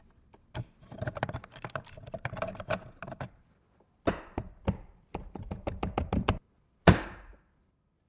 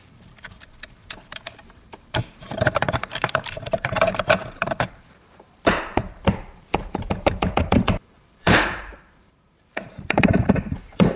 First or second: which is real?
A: first